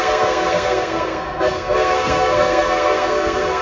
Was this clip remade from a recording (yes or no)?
yes